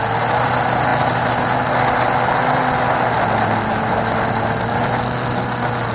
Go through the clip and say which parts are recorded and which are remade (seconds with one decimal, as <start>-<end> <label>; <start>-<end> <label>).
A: 0.0-5.9 recorded